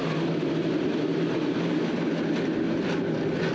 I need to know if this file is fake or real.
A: real